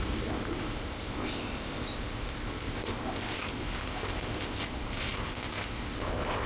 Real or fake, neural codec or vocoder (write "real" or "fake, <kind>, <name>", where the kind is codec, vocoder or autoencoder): fake, codec, ZipCodec